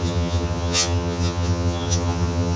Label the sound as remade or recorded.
remade